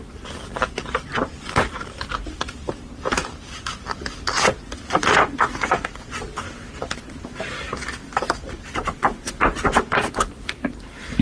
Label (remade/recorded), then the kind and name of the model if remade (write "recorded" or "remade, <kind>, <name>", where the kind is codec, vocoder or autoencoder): recorded